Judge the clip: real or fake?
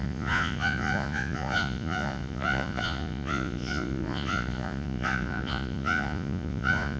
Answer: fake